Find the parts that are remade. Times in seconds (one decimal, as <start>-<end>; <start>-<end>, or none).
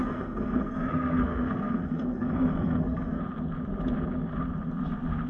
0.0-3.2